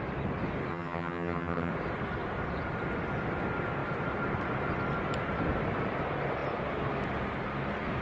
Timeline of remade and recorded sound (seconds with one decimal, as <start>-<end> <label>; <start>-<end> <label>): 0.0-0.7 recorded; 0.7-1.7 remade; 1.7-8.0 recorded